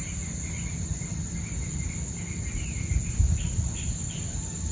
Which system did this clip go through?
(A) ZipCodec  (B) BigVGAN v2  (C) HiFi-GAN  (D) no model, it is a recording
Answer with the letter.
D